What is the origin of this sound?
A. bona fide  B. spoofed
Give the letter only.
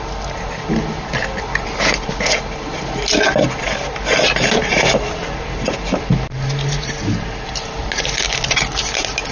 A